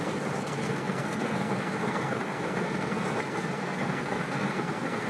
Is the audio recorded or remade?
remade